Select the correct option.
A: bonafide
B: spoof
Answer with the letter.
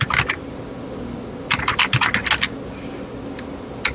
A